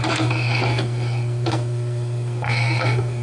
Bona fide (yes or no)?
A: no